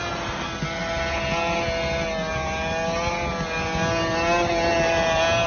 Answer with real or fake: real